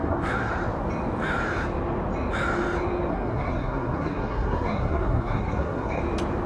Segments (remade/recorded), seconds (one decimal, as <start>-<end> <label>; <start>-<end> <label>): 0.0-0.5 remade; 0.5-3.1 recorded; 3.1-6.0 remade; 6.0-6.5 recorded